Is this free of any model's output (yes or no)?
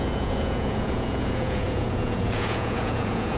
no